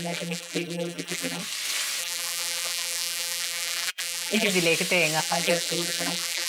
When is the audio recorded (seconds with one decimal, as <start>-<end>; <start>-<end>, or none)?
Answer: 1.4-2.0; 4.5-5.2